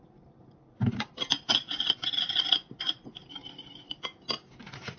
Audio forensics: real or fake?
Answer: real